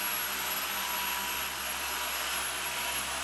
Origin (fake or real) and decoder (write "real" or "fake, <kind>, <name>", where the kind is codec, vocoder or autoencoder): real